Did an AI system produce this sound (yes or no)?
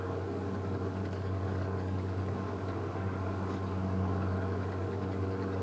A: yes